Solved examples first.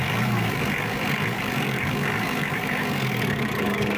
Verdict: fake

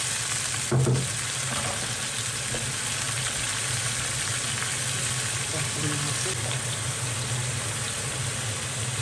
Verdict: real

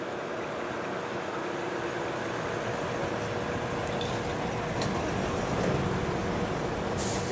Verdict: real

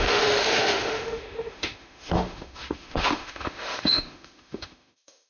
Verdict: fake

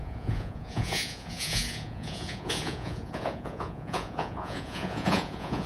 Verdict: fake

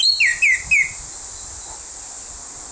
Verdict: real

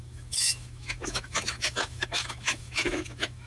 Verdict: fake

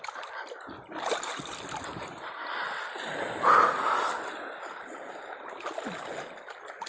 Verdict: real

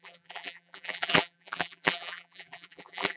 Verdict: fake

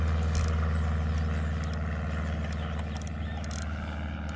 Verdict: real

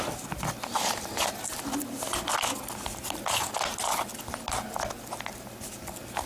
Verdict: real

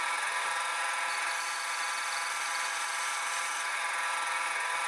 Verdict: real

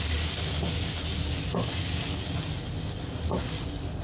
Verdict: real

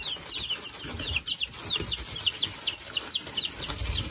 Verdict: fake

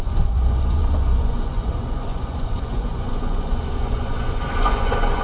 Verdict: fake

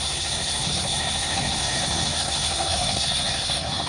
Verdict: fake